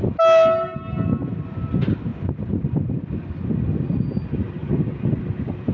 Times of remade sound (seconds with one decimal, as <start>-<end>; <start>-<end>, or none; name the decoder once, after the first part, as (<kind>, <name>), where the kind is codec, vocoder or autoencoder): none